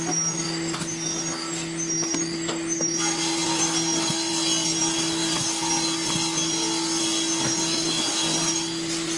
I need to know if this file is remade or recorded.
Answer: recorded